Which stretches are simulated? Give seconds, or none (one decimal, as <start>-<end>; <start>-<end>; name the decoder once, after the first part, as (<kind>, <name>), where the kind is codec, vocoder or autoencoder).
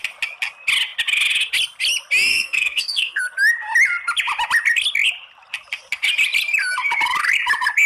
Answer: 2.3-3.2 (codec, SNAC)